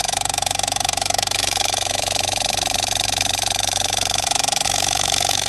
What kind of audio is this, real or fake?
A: fake